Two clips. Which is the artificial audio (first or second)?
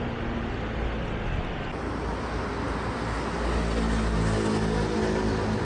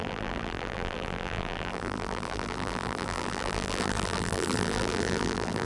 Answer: second